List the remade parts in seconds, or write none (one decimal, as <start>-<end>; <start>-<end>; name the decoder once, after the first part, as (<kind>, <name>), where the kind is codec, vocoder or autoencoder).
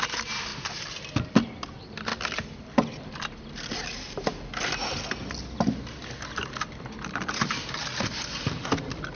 none